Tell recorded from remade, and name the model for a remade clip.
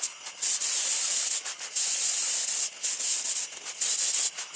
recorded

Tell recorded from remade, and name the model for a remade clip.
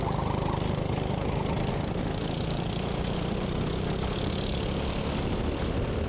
recorded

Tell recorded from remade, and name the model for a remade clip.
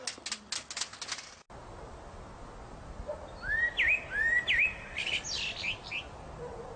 recorded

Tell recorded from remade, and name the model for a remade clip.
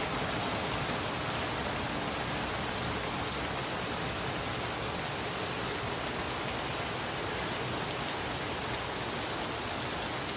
recorded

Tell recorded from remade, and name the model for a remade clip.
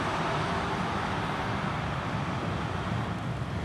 recorded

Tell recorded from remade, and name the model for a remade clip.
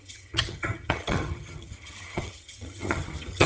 remade, vocoder, HiFi-GAN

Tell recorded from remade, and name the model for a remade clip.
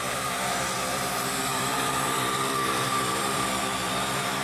remade, vocoder, BigVGAN v2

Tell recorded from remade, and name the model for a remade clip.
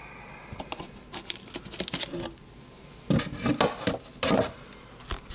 recorded